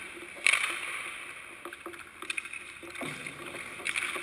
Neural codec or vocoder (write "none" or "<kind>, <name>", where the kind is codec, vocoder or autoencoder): vocoder, BigVGAN v2